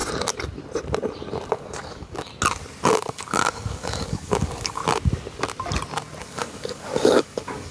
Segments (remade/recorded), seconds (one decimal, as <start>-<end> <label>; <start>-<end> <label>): 0.0-1.5 recorded; 1.5-2.3 remade; 2.3-2.9 recorded; 2.9-4.8 remade; 4.8-6.2 recorded; 6.2-7.7 remade